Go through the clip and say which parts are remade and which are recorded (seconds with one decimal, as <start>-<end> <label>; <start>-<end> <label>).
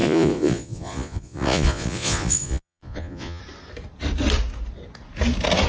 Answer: 0.0-3.4 remade; 3.4-5.7 recorded